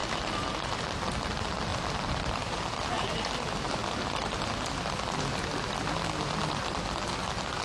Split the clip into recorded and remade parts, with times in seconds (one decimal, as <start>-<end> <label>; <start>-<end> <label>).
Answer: 0.0-0.8 remade; 0.8-7.6 recorded